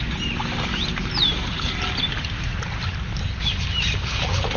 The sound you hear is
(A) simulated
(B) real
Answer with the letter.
B